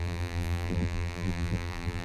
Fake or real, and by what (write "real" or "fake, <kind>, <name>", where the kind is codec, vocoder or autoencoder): fake, vocoder, BigVGAN v2